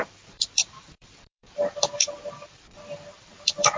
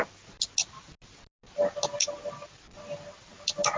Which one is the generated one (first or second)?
first